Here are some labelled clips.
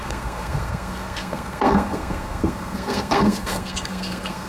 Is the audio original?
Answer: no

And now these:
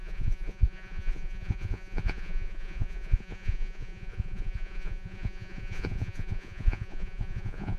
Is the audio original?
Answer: no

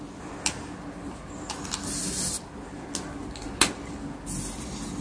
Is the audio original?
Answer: yes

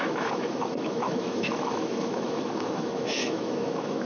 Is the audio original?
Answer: no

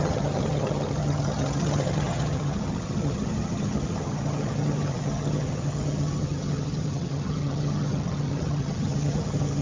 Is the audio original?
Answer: no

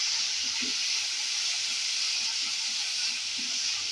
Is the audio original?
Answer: yes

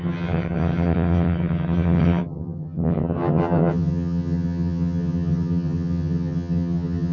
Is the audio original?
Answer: no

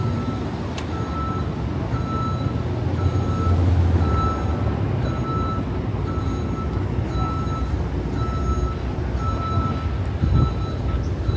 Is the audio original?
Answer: yes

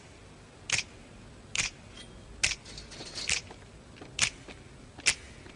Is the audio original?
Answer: yes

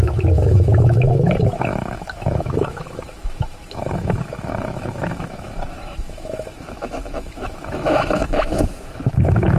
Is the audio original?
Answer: no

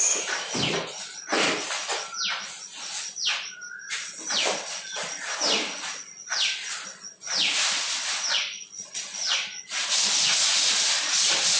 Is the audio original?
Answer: yes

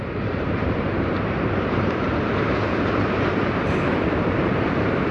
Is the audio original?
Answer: no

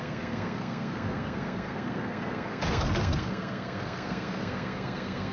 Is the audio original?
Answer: no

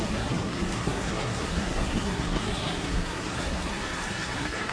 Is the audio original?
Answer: no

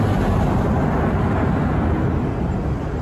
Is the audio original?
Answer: yes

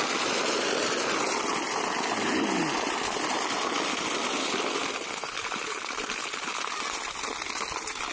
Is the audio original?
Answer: yes